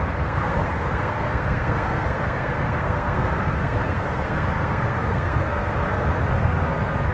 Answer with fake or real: fake